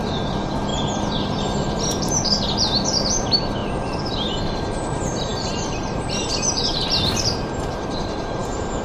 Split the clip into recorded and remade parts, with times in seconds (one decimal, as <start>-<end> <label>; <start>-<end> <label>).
0.0-0.7 remade; 0.7-1.2 recorded; 1.2-8.8 remade